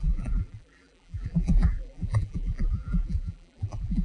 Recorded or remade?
remade